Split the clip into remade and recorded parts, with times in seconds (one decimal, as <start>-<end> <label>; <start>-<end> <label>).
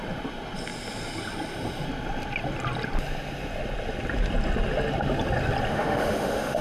0.0-5.7 recorded; 5.7-6.6 remade